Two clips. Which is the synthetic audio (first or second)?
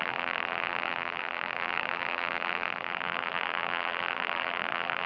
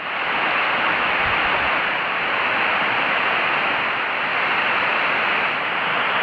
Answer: first